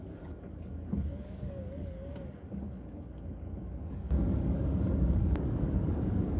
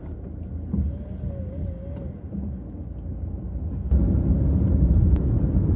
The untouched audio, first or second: second